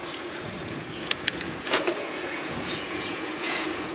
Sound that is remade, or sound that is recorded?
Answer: remade